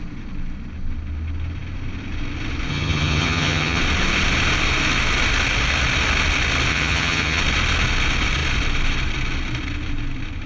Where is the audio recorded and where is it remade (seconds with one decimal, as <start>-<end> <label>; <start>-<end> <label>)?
0.0-2.7 recorded; 2.7-3.8 remade; 3.8-6.7 recorded; 6.7-7.4 remade; 7.4-10.5 recorded